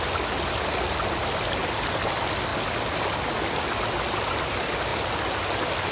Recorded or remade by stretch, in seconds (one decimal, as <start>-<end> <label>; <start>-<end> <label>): 0.0-5.9 recorded